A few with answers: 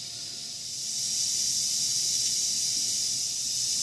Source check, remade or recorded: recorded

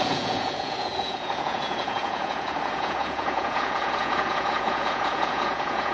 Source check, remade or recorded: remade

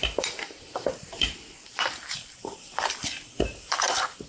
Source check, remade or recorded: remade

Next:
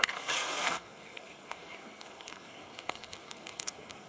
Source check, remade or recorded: remade